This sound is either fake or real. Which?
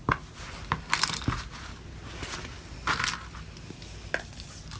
real